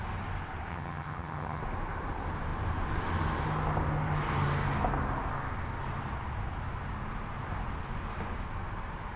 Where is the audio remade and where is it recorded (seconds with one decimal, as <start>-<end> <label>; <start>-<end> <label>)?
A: 0.0-0.7 recorded; 0.7-1.6 remade; 1.6-9.2 recorded